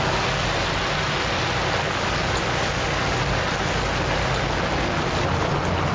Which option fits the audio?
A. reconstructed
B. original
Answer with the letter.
B